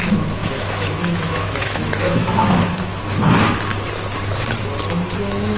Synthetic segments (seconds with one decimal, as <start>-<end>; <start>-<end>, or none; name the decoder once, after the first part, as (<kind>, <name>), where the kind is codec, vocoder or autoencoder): 0.0-3.7 (autoencoder, DAC-VAE); 4.9-5.6